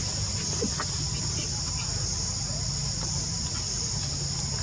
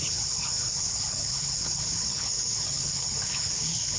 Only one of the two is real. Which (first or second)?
first